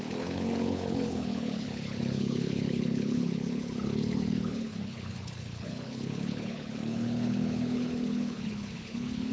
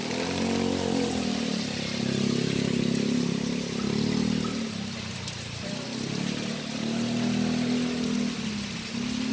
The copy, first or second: first